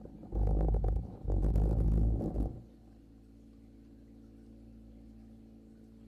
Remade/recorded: recorded